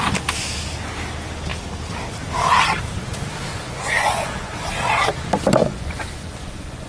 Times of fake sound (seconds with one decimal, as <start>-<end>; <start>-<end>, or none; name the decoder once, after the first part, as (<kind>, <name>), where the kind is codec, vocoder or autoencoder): 3.5-4.5 (vocoder, Vocos); 5.6-6.9